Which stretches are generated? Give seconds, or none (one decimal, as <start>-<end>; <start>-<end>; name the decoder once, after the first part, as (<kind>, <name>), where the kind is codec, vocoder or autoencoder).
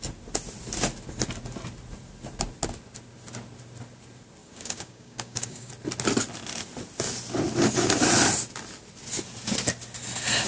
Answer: 4.4-5.7 (codec, DAC)